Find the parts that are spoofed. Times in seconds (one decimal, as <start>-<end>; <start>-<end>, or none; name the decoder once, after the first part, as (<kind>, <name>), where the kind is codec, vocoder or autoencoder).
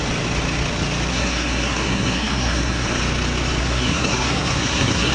1.1-3.0 (codec, SNAC); 3.6-5.1